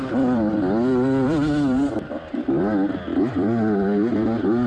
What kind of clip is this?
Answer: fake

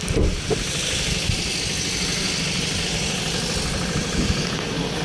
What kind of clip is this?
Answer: fake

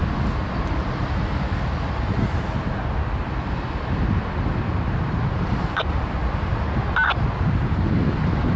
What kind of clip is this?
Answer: real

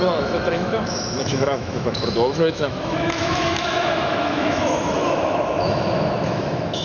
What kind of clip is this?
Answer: fake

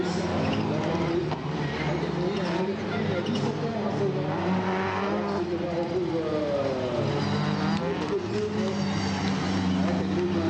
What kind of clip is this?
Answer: real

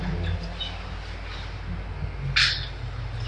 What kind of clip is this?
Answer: real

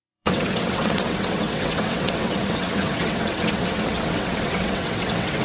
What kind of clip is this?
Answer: fake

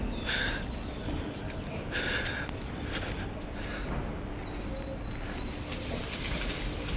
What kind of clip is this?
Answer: real